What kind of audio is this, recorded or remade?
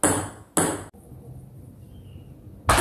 recorded